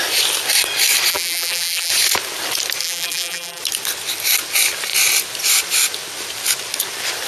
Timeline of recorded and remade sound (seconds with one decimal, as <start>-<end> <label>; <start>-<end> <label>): 0.0-1.1 recorded; 1.1-1.9 remade; 1.9-2.8 recorded; 2.8-3.6 remade; 3.6-7.3 recorded